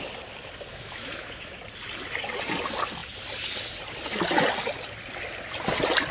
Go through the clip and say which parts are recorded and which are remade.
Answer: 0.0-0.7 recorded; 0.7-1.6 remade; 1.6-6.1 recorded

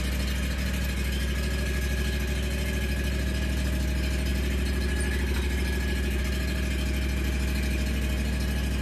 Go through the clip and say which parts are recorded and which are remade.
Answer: 0.0-8.8 recorded

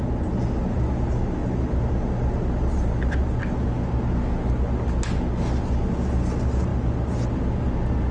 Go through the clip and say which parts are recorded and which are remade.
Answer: 0.0-8.1 recorded

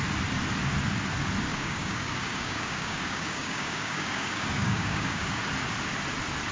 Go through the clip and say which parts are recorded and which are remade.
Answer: 0.0-1.5 recorded; 1.5-5.4 remade; 5.4-6.5 recorded

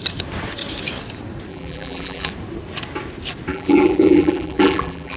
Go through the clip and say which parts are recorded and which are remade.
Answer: 0.0-1.5 recorded; 1.5-2.3 remade; 2.3-3.5 recorded; 3.5-5.2 remade

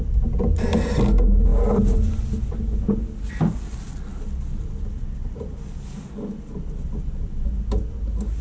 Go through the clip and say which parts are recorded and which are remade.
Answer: 0.0-8.4 recorded

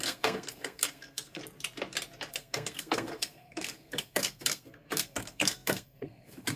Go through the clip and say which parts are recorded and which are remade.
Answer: 0.0-1.4 remade; 1.4-2.3 recorded; 2.3-6.6 remade

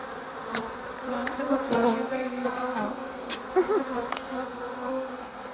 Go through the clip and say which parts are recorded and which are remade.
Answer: 0.0-1.7 recorded; 1.7-3.3 remade; 3.3-4.1 recorded; 4.1-5.5 remade